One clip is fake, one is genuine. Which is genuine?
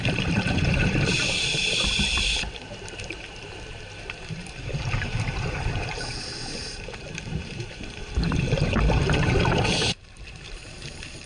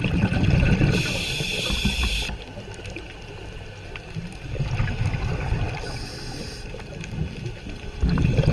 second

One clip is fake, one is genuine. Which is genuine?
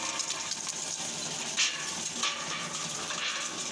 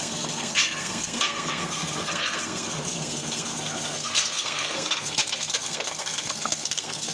first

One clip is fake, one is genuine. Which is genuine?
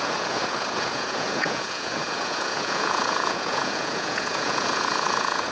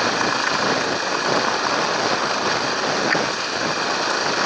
second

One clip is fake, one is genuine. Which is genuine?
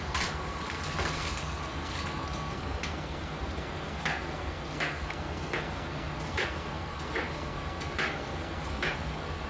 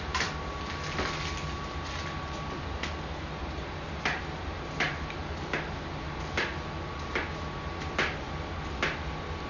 second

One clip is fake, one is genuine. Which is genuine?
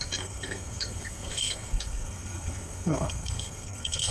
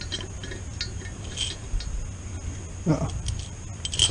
second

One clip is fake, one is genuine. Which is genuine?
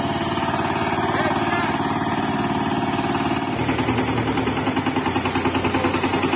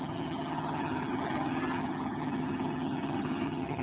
first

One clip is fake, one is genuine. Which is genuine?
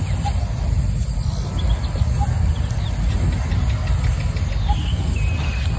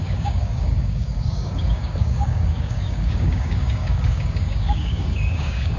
first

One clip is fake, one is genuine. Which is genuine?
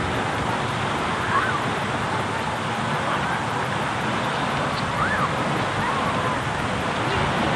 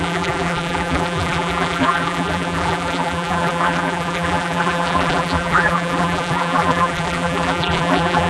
first